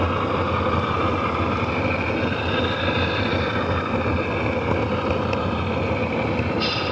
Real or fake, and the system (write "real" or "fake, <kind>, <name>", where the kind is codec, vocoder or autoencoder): real